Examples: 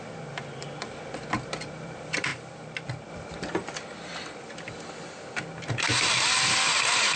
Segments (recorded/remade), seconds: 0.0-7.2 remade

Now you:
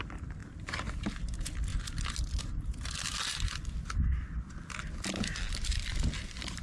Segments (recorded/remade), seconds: 0.0-0.4 recorded; 0.4-1.1 remade; 1.1-3.1 recorded; 3.1-6.6 remade

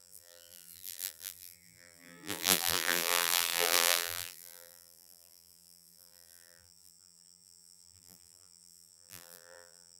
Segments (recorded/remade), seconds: 0.0-10.0 remade

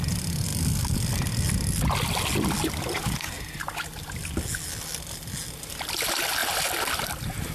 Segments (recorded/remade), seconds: 0.0-7.5 recorded

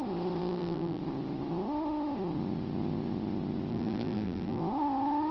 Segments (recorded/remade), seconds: 0.0-0.4 recorded; 0.4-1.0 remade; 1.0-3.7 recorded; 3.7-4.6 remade; 4.6-5.3 recorded

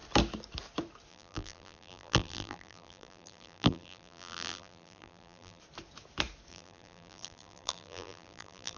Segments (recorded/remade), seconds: 0.0-1.1 recorded; 1.1-5.6 remade; 5.6-6.5 recorded; 6.5-8.8 remade

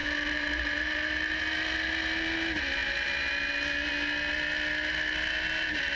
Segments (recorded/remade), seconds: 0.0-1.4 remade; 1.4-6.0 recorded

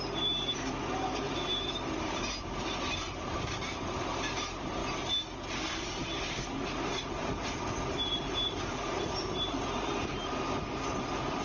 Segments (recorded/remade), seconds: 0.0-4.8 remade; 4.8-5.8 recorded; 5.8-11.4 remade